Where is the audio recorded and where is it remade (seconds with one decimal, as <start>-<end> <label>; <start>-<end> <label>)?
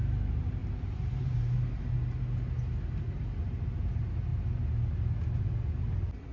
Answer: 0.0-0.6 recorded; 0.6-1.9 remade; 1.9-6.3 recorded